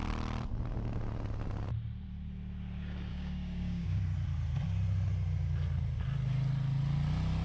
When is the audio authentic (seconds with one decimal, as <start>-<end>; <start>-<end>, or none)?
0.0-3.1; 4.0-7.4